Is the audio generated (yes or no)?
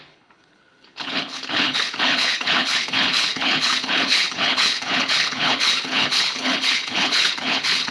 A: yes